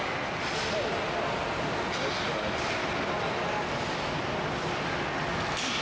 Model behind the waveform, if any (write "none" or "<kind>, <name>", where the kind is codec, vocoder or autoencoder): none